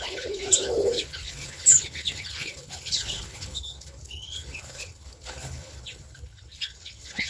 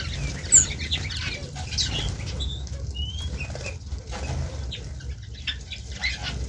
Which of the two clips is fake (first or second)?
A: first